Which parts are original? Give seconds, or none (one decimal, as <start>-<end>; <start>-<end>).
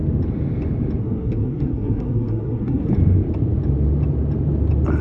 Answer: 0.0-1.0; 2.9-5.0